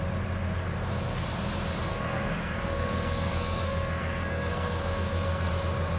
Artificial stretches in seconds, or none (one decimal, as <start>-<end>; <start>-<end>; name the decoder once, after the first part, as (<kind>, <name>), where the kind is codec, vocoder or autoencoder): 1.9-5.5 (codec, SNAC)